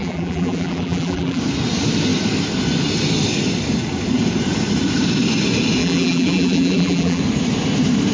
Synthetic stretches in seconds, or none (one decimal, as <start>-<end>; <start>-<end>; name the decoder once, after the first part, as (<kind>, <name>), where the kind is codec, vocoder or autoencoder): 0.0-1.4 (vocoder, BigVGAN v2); 5.8-7.2